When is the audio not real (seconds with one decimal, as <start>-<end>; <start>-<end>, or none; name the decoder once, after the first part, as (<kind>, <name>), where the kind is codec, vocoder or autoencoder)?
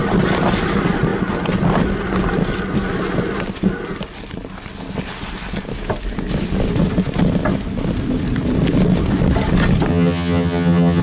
9.9-11.0 (vocoder, HiFi-GAN)